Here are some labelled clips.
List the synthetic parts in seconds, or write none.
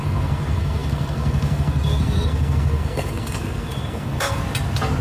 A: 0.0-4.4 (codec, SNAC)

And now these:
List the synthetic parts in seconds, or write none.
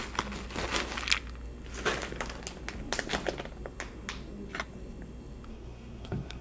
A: 5.5-6.4 (codec, SNAC)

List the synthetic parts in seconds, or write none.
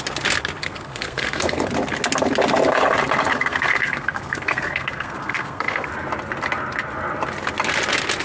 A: 0.6-1.7 (codec, SNAC); 3.3-5.9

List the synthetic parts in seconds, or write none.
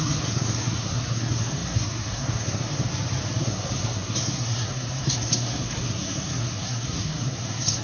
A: 0.0-2.9 (codec, SNAC); 3.4-7.8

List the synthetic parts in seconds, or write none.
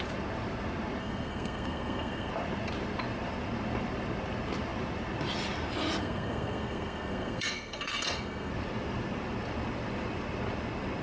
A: 1.0-2.3 (codec, SNAC); 6.0-8.5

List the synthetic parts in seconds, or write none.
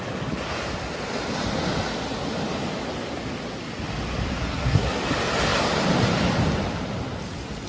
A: 4.3-5.0 (codec, SNAC)